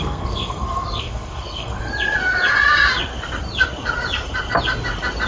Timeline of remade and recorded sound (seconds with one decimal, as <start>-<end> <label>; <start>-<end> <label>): 0.0-1.9 remade; 1.9-5.3 recorded